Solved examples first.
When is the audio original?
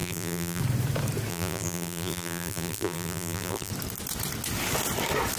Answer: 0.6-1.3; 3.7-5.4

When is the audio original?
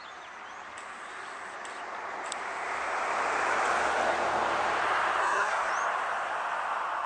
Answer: 0.0-5.2; 5.7-7.1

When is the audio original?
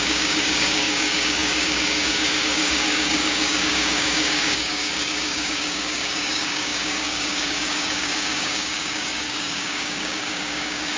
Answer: none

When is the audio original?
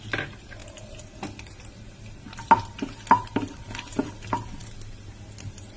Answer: 0.0-5.8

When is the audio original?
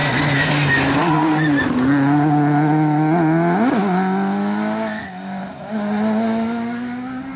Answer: 0.0-7.4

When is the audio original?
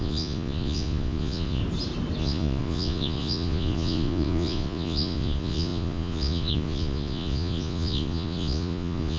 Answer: 1.6-2.2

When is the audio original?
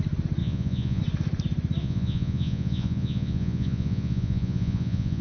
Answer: 0.0-0.4; 1.0-1.8